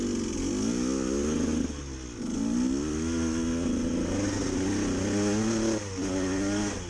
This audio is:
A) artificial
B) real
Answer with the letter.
B